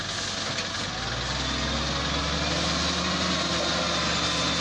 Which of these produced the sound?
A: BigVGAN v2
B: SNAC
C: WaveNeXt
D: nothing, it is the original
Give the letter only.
D